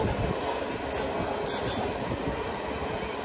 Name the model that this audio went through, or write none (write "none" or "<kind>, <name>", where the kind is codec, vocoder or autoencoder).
none